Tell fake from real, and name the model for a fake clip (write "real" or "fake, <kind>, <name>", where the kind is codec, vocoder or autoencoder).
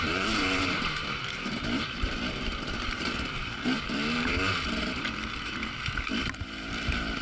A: fake, vocoder, BigVGAN v2